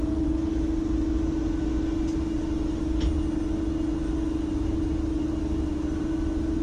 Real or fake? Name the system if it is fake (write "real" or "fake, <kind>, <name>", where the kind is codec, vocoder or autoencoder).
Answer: real